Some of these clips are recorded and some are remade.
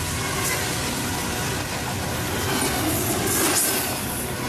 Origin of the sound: recorded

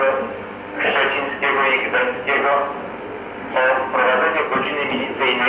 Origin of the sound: recorded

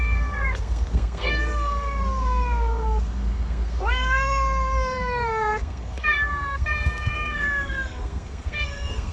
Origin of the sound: remade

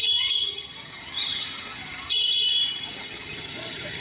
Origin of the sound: remade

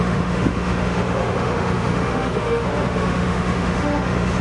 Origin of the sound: remade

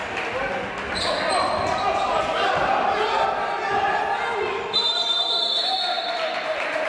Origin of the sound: recorded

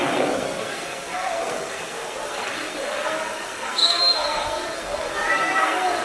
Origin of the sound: remade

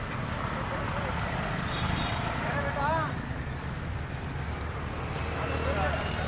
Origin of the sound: recorded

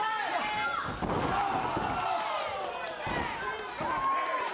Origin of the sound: recorded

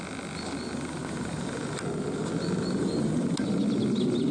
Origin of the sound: recorded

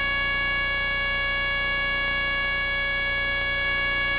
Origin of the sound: recorded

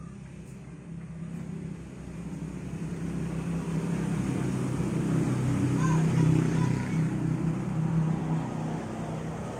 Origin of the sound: recorded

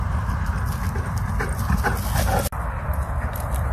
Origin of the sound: recorded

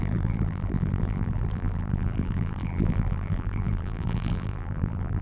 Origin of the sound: remade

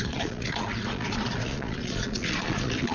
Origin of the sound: remade